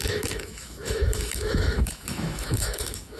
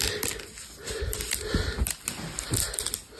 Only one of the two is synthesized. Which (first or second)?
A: first